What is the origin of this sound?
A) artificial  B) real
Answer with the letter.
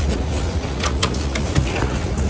A